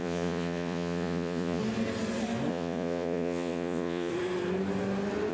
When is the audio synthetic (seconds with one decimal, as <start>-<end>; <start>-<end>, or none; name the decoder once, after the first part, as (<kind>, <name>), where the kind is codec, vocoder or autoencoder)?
0.0-1.6 (vocoder, Vocos); 2.5-4.1